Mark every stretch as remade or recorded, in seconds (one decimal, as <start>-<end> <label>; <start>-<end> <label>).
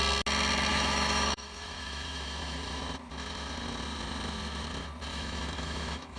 0.0-0.7 recorded; 0.7-2.8 remade; 2.8-5.1 recorded; 5.1-6.2 remade